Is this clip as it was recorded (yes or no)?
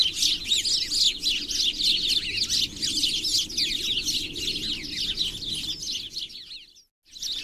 yes